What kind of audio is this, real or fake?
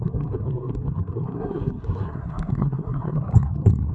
fake